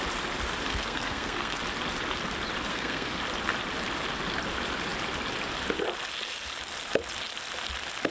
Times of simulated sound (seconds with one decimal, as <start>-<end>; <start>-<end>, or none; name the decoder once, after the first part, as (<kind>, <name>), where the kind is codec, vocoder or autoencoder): 0.7-1.6 (codec, SNAC); 2.7-3.2